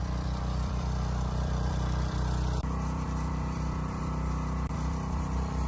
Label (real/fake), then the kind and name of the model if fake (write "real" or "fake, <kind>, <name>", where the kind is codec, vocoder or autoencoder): fake, vocoder, BigVGAN v2